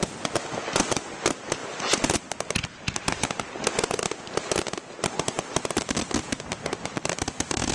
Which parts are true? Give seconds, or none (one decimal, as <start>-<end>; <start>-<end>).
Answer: 0.0-7.7